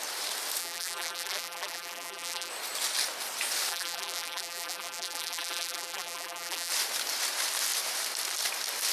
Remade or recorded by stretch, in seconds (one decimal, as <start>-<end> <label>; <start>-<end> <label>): 0.0-0.6 recorded; 0.6-2.5 remade; 2.5-3.7 recorded; 3.7-6.7 remade; 6.7-8.9 recorded